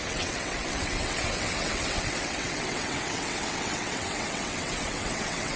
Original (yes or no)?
no